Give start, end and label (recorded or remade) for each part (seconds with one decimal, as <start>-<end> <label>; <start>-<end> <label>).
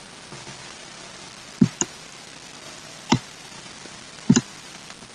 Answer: 0.0-5.1 recorded